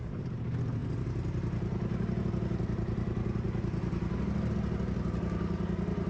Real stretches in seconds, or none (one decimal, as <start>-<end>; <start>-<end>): 0.0-6.1